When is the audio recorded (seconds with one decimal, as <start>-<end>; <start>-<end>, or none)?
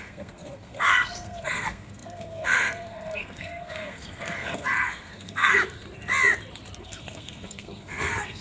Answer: 5.6-6.8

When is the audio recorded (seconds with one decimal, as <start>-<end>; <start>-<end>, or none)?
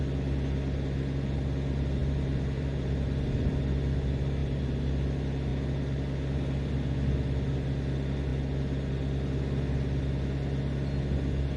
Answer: 0.0-2.0; 3.5-4.4; 4.9-11.6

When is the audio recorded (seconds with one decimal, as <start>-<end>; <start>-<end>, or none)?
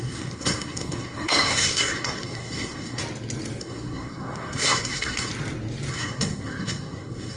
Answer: 3.0-3.6; 5.3-5.9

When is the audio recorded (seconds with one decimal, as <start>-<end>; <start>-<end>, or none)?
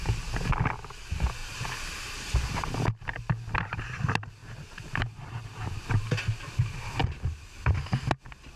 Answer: 0.0-1.4; 2.0-4.4; 6.0-8.6